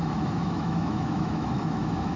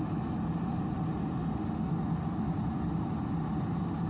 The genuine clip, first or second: second